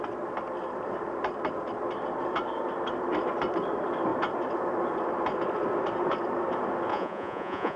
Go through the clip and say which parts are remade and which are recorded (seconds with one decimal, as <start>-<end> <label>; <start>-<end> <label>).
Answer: 0.0-6.9 recorded; 6.9-7.8 remade